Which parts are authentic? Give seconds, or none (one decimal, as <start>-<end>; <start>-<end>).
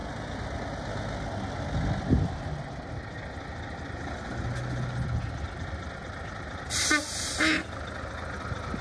0.0-8.8